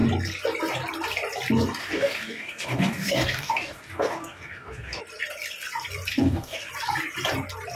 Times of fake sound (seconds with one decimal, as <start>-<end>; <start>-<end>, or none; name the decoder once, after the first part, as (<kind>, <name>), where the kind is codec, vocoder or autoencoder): 1.8-5.0 (codec, DAC); 6.1-6.7